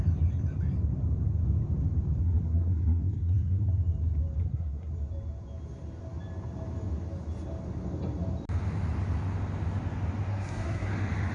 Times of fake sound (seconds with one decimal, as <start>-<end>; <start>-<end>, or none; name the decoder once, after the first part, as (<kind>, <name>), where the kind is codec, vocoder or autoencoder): 2.2-3.7 (codec, SNAC); 4.4-4.9; 10.3-10.9